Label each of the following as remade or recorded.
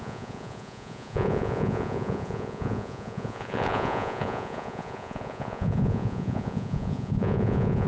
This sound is remade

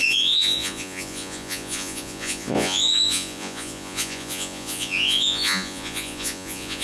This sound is remade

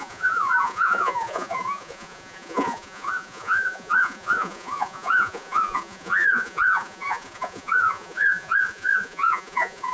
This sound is remade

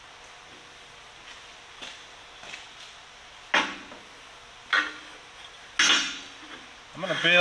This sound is recorded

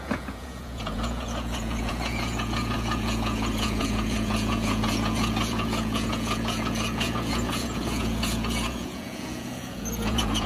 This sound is remade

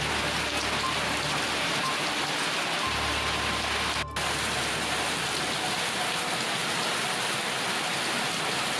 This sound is recorded